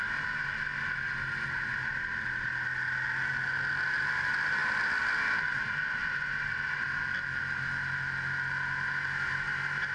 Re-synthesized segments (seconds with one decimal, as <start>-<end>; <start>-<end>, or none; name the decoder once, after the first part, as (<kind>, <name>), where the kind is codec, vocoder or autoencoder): none